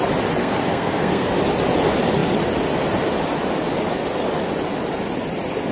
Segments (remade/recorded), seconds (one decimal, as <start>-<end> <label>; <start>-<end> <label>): 0.0-0.4 recorded; 0.4-1.3 remade; 1.3-5.7 recorded